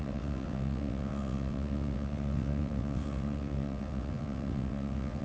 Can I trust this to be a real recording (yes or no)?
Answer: no